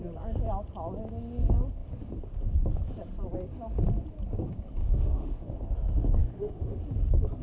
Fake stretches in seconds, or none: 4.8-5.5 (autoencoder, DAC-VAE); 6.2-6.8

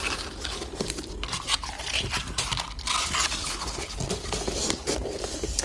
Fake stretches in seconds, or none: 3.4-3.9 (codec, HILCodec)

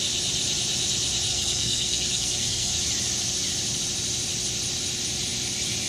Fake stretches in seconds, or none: 1.3-2.7 (codec, SNAC)

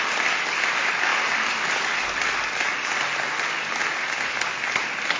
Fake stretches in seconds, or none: none

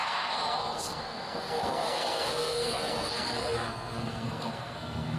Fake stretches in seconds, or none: 0.0-5.2 (codec, SNAC)